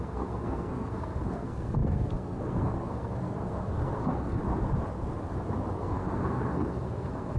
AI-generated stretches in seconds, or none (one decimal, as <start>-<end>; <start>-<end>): 0.0-4.4; 5.8-7.4